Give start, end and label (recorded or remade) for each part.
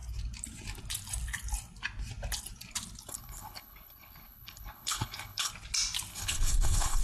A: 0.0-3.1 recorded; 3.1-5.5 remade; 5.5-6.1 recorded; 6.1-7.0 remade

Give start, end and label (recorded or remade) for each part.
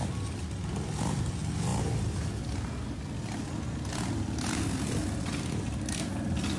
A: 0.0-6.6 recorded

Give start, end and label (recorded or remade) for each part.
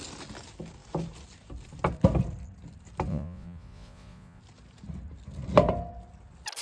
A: 0.0-3.1 recorded; 3.1-4.4 remade; 4.4-6.6 recorded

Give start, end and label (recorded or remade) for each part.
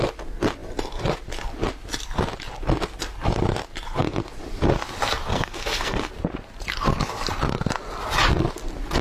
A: 0.0-5.3 recorded; 5.3-6.1 remade; 6.1-9.0 recorded